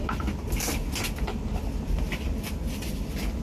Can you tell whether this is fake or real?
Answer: real